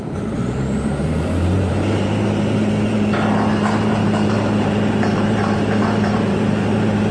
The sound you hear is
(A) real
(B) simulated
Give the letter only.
B